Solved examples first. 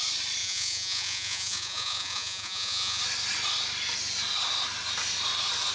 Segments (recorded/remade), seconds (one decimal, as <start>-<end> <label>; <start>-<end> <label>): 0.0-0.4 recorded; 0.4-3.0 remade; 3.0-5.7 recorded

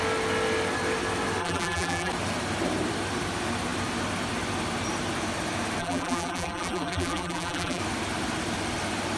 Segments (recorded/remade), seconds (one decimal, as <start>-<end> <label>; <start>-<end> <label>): 0.0-1.4 recorded; 1.4-2.1 remade; 2.1-5.8 recorded; 5.8-7.8 remade; 7.8-9.2 recorded

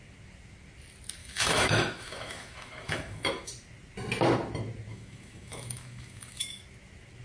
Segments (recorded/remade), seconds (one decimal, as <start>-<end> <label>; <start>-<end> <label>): 0.0-1.2 recorded; 1.2-3.5 remade; 3.5-4.9 recorded; 4.9-6.6 remade; 6.6-7.2 recorded

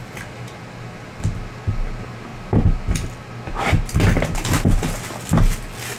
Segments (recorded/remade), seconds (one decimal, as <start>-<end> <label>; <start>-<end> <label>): 0.0-6.0 recorded

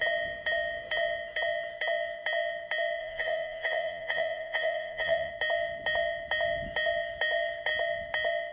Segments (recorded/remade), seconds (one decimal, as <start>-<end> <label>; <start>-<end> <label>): 0.0-3.0 recorded; 3.0-5.3 remade; 5.3-8.5 recorded

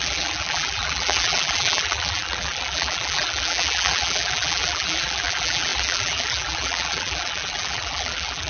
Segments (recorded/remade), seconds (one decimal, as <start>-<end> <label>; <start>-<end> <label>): 0.0-8.5 remade

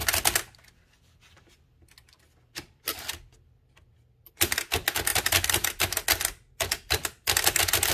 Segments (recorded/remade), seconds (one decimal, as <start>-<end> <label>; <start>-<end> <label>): 0.0-7.9 recorded

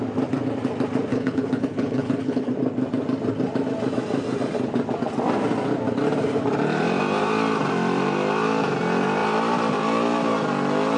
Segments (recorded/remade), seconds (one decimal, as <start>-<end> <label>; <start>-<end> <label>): 0.0-1.1 recorded; 1.1-2.5 remade; 2.5-11.0 recorded